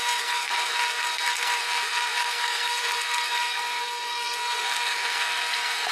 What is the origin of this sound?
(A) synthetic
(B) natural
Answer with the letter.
A